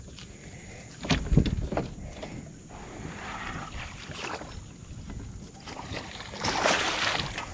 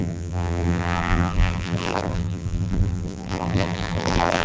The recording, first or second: first